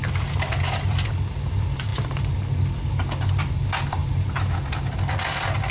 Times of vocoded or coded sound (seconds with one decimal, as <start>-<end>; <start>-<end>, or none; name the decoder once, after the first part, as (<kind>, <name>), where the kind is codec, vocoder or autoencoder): 0.0-1.9 (vocoder, BigVGAN v2); 3.4-4.0; 5.1-5.7